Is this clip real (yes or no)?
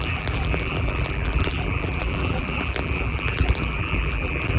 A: no